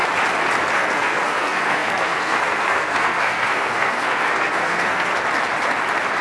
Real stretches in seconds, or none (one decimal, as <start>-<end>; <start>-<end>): 0.0-0.7; 5.1-6.2